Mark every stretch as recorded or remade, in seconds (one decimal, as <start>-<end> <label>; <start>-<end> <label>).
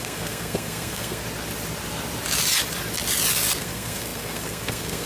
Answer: 0.0-1.2 remade; 1.2-3.6 recorded; 3.6-5.1 remade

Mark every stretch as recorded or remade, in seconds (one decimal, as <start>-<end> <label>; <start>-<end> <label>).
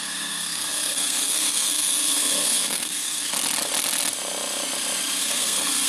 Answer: 0.0-3.3 remade; 3.3-5.2 recorded; 5.2-5.9 remade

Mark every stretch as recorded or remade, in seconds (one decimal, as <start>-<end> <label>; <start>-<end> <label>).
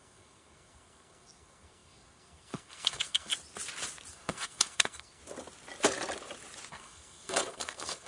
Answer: 0.0-3.3 remade; 3.3-4.1 recorded; 4.1-5.2 remade; 5.2-6.7 recorded; 6.7-8.1 remade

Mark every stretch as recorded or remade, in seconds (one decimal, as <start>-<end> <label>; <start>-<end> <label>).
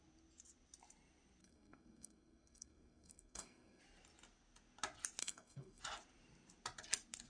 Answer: 0.0-1.4 recorded; 1.4-3.8 remade; 3.8-5.2 recorded; 5.2-5.8 remade; 5.8-7.3 recorded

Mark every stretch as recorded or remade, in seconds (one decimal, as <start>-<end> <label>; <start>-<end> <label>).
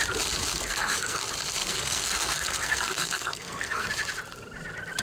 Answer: 0.0-0.5 recorded; 0.5-1.2 remade; 1.2-1.6 recorded; 1.6-3.9 remade; 3.9-5.0 recorded